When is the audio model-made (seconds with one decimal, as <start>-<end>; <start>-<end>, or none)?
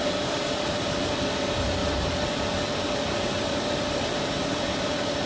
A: none